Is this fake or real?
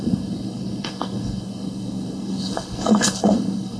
fake